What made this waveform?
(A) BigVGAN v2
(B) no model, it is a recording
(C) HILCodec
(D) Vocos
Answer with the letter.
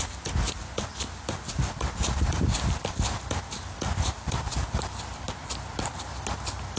B